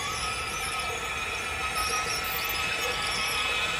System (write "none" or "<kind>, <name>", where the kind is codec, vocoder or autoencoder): none